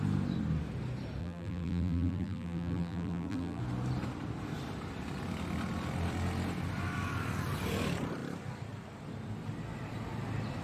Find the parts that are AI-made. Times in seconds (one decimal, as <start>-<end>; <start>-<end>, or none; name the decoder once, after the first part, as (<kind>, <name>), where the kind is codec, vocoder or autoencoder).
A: 1.2-3.6 (vocoder, BigVGAN v2)